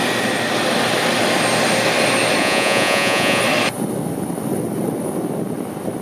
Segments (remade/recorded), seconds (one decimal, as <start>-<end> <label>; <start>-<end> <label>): 0.0-2.4 recorded; 2.4-3.4 remade; 3.4-6.0 recorded